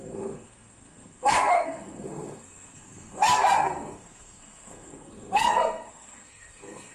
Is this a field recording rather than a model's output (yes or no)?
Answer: no